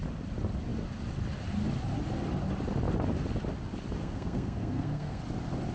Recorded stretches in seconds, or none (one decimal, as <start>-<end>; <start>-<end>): 0.0-4.0; 5.2-5.7